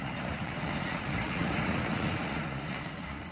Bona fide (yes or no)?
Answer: no